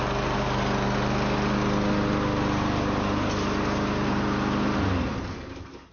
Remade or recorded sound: recorded